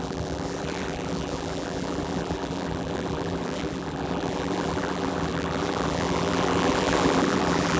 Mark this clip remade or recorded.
remade